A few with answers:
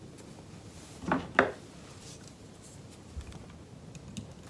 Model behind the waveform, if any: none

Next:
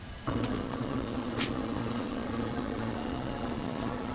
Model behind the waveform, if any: vocoder, Vocos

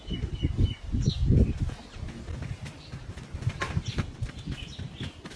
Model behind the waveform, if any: none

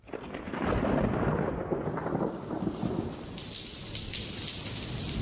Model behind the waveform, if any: none